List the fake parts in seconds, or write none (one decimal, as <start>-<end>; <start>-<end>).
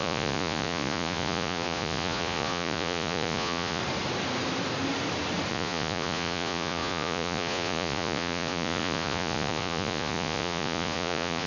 0.0-3.8; 5.5-11.5